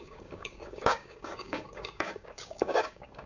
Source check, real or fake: fake